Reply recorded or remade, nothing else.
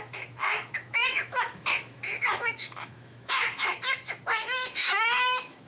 remade